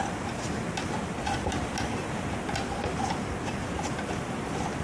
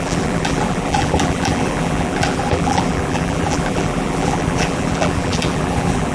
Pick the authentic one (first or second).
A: first